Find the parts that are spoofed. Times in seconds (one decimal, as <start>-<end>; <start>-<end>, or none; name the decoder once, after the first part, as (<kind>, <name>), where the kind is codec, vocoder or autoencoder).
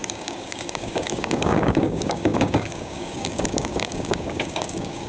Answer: 0.0-5.1 (codec, DAC)